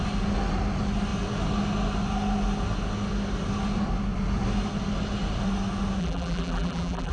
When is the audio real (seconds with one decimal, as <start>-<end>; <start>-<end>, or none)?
0.0-6.0